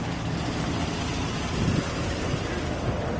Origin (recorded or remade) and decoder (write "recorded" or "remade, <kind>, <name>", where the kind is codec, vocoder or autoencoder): recorded